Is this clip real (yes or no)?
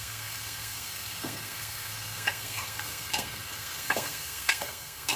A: no